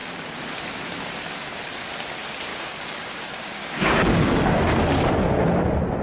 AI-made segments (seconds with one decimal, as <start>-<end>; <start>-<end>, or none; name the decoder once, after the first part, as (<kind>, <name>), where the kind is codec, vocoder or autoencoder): 2.5-4.8 (codec, DAC)